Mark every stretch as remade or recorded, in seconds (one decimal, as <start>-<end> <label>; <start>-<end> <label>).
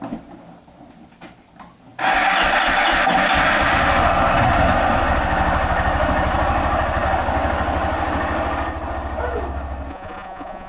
0.0-9.9 recorded; 9.9-10.7 remade